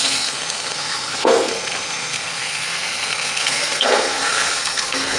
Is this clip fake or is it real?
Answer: fake